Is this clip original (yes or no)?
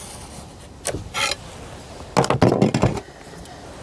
yes